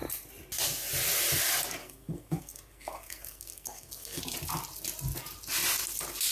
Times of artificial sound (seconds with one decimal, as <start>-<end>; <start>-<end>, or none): 1.8-4.2